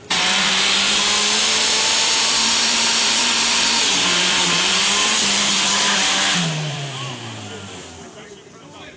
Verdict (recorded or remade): remade